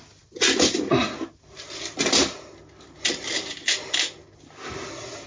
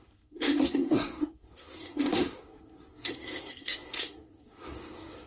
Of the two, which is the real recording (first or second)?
first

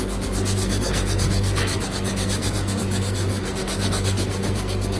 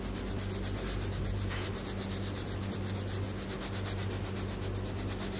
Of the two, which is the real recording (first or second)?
second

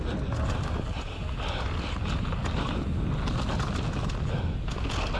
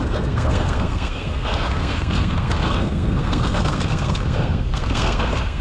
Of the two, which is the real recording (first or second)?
first